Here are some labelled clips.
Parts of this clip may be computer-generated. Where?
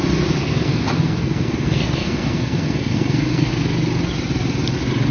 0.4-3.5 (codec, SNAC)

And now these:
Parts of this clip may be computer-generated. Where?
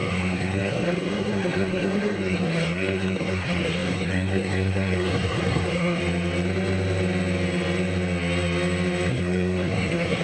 0.0-6.0 (codec, SNAC); 9.1-10.2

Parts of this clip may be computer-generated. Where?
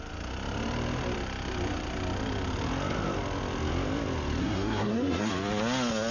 4.4-5.3 (codec, SNAC)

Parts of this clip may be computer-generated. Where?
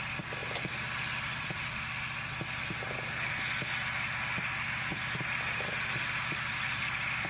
none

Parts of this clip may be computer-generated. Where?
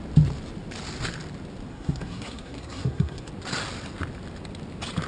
1.7-3.3 (codec, SNAC)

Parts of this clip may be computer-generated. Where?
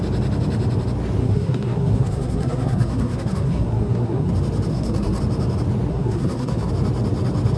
1.2-4.3 (codec, SNAC); 4.7-5.2; 5.9-6.7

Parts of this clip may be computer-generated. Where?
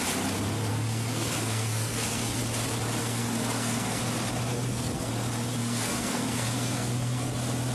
0.7-2.4 (codec, SNAC); 3.0-4.0; 4.5-5.1; 5.6-7.3